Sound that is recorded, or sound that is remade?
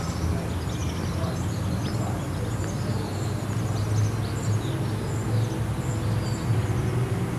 recorded